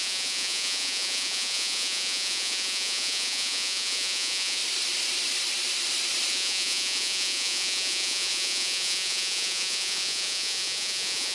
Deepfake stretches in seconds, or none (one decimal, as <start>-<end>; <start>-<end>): 0.0-4.6; 6.3-11.3